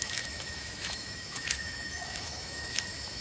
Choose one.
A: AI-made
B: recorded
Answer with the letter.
A